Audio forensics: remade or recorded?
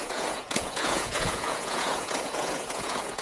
remade